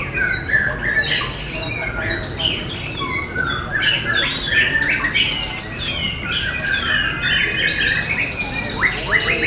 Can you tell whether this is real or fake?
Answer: real